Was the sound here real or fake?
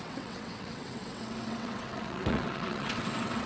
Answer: fake